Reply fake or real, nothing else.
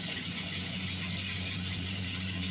fake